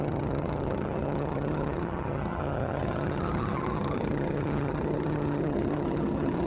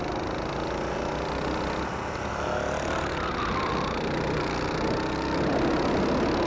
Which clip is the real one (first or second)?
second